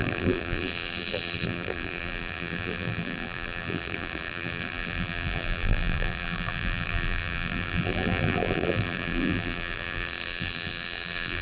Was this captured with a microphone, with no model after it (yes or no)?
no